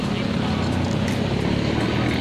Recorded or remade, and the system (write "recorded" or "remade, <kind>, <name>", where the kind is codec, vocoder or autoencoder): recorded